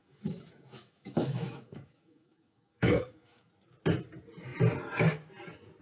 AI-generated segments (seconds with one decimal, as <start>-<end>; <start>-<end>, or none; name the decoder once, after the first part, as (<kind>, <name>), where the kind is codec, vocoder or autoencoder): 0.0-3.5 (autoencoder, DAC-VAE)